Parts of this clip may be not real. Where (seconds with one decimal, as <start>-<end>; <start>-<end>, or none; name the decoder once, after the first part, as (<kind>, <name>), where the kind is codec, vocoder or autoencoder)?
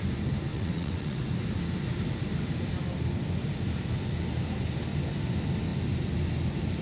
0.5-1.3 (vocoder, WaveNeXt)